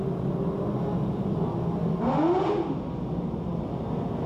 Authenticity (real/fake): real